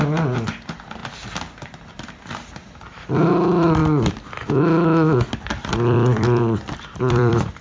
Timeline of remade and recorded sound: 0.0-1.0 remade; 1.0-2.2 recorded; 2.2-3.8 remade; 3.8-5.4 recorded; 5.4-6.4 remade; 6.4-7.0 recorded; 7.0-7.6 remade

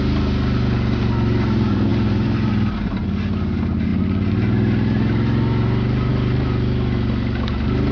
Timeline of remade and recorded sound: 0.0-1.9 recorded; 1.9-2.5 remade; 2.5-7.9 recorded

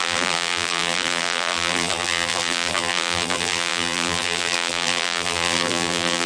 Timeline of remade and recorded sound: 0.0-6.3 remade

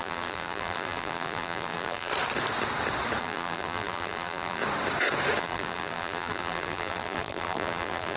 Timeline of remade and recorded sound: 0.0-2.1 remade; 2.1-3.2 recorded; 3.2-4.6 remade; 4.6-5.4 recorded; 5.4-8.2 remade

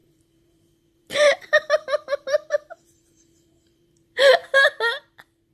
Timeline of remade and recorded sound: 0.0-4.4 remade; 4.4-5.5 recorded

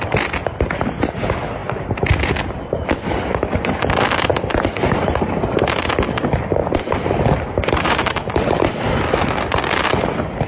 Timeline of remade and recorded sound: 0.0-4.3 recorded; 4.3-5.9 remade; 5.9-6.6 recorded; 6.6-8.9 remade; 8.9-10.5 recorded

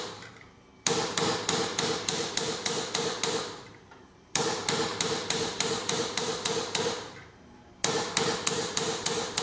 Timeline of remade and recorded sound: 0.0-9.4 remade

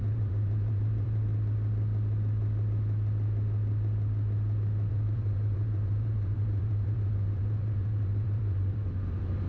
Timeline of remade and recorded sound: 0.0-1.3 remade; 1.3-4.9 recorded; 4.9-9.5 remade